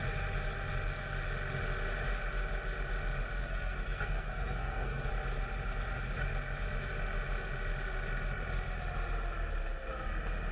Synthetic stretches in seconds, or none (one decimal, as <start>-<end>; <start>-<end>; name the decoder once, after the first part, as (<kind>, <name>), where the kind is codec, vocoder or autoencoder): 3.4-5.1 (codec, SNAC)

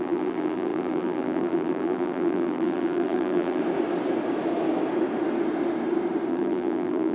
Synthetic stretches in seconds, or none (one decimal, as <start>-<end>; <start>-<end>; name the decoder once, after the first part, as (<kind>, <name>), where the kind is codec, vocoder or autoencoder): 0.0-3.6 (vocoder, BigVGAN v2); 6.3-7.1

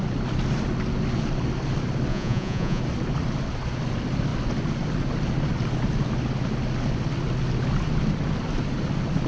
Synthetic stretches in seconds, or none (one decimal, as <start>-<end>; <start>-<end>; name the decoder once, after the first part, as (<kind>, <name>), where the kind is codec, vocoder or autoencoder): 2.1-2.8 (vocoder, Vocos)